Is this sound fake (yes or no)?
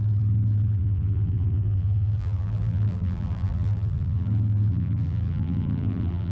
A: yes